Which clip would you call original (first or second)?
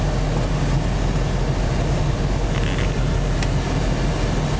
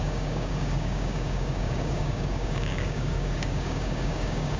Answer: first